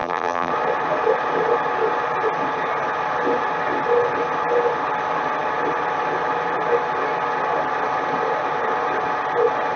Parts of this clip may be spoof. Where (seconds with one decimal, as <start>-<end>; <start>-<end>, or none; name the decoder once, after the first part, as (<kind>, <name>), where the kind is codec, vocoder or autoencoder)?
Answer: 0.0-0.5 (vocoder, BigVGAN v2)